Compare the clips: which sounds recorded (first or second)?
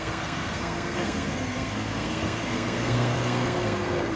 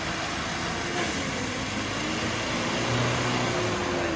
second